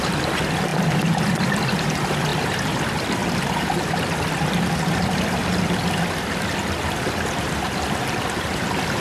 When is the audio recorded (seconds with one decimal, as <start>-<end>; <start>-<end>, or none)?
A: 3.2-5.8